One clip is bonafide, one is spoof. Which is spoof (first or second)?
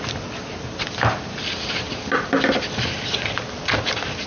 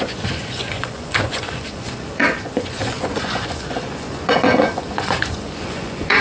second